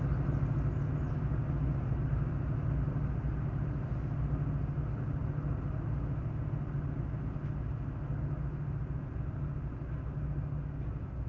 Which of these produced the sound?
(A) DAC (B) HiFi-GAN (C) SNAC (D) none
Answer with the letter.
D